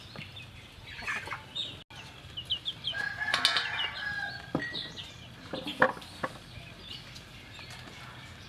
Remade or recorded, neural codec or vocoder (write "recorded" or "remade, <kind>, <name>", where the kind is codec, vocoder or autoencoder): recorded